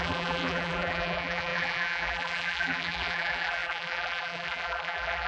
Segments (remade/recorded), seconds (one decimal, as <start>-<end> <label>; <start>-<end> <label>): 0.0-5.3 remade